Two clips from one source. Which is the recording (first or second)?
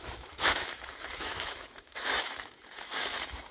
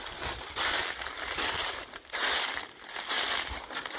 second